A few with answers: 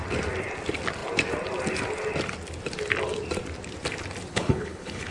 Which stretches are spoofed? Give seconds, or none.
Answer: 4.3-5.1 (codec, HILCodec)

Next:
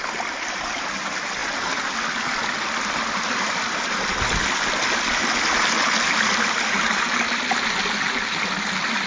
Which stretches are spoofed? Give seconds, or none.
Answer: none

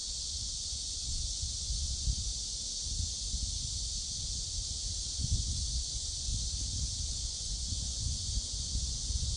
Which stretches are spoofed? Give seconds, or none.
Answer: 0.0-2.3 (vocoder, Vocos); 5.2-6.3; 7.1-9.4

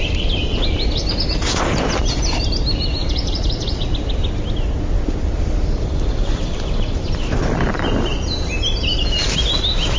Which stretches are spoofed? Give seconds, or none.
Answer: 3.0-3.9 (vocoder, Vocos)

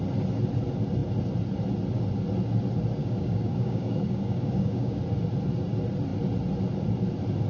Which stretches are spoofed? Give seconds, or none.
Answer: 3.0-5.0 (codec, DAC)

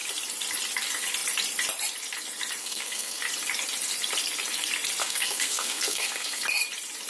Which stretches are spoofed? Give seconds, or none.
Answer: 2.6-3.2 (codec, SNAC); 5.0-6.4

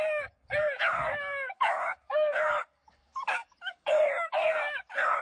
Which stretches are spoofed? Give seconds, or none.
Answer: 0.0-5.2 (codec, DAC)

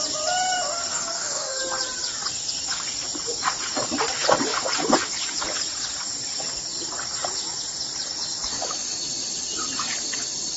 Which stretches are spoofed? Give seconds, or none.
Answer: 0.9-1.6 (codec, DAC)